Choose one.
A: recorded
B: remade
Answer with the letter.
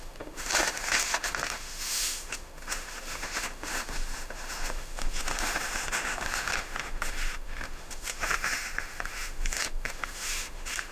B